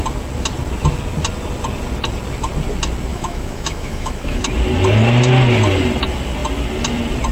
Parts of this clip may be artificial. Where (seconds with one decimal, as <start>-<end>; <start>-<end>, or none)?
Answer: 3.1-4.4